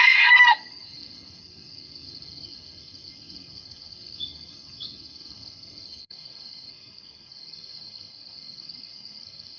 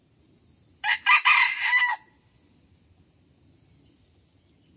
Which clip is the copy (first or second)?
first